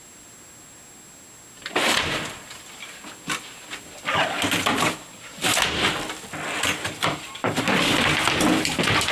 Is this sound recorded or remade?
recorded